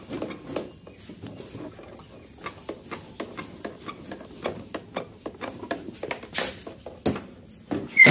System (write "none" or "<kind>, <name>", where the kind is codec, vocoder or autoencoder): none